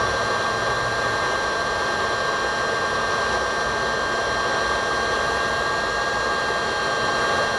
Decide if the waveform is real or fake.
real